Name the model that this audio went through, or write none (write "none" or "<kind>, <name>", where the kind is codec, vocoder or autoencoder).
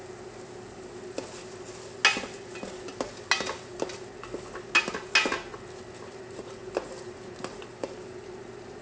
none